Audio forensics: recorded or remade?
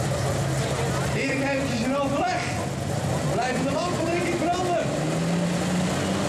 recorded